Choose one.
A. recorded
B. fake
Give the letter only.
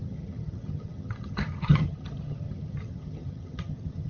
B